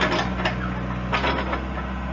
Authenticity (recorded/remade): recorded